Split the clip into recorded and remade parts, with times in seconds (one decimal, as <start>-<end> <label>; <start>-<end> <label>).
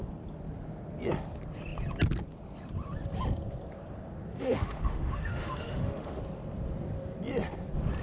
0.0-4.3 recorded; 4.3-6.2 remade; 6.2-8.0 recorded